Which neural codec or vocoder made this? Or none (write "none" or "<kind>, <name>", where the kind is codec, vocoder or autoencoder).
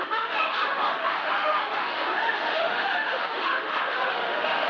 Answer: autoencoder, DAC-VAE